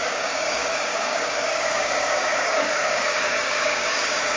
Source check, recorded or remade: remade